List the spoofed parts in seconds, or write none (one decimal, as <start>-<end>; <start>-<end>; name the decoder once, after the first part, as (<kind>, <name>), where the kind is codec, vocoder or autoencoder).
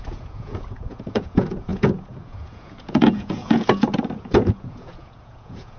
0.0-5.8 (vocoder, Vocos)